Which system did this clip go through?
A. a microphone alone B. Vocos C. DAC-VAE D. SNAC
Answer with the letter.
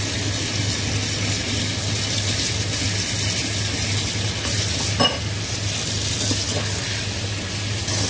A